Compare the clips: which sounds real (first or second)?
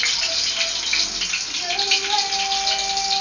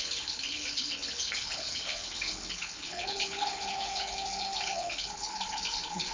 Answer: first